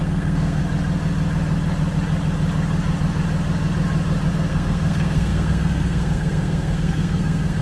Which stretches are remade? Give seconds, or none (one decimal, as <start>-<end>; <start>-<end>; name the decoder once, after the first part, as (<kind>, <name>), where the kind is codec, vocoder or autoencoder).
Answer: 0.0-0.6 (codec, SNAC); 4.3-7.6